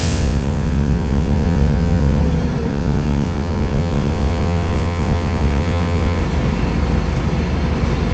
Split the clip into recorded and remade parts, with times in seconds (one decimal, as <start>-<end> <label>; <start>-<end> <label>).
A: 0.0-2.2 remade; 2.2-2.7 recorded; 2.7-6.2 remade; 6.2-8.1 recorded